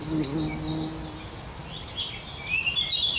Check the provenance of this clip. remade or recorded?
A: recorded